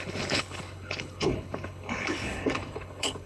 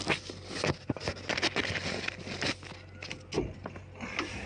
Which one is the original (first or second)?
second